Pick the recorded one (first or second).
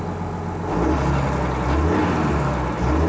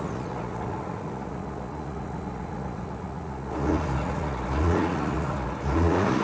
first